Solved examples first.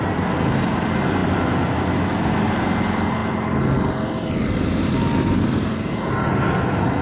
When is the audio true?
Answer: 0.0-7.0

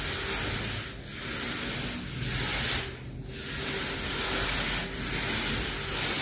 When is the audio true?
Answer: 0.0-6.2

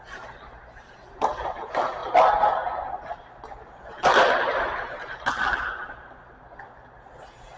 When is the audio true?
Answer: 0.0-7.6

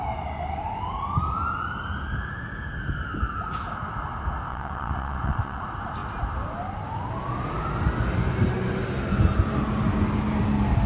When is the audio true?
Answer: 0.0-4.5; 5.6-10.9

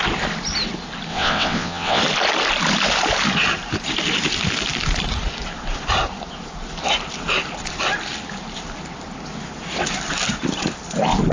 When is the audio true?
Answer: 0.0-1.1; 2.0-11.3

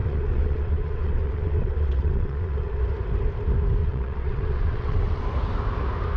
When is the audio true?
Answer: 2.8-3.8; 5.2-6.2